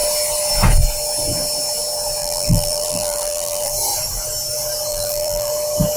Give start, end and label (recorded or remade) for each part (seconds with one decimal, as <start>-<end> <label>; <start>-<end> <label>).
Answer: 0.0-2.2 recorded; 2.2-3.7 remade; 3.7-4.9 recorded; 4.9-5.5 remade; 5.5-6.0 recorded